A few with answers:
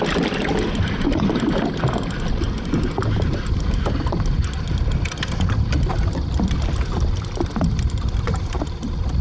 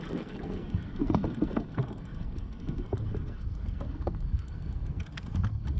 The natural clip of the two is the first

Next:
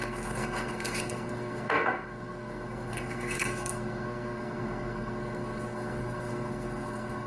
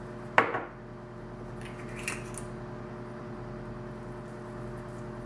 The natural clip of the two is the second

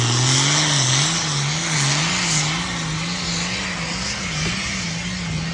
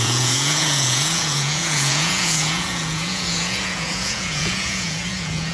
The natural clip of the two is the first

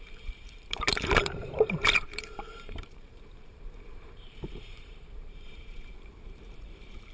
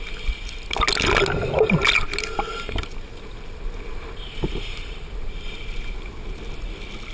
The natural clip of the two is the second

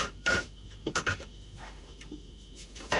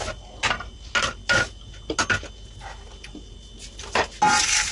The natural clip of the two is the second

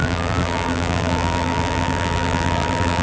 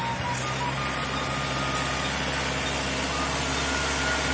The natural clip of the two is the second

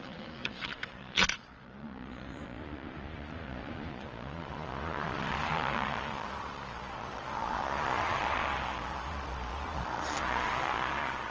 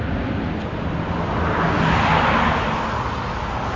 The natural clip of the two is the second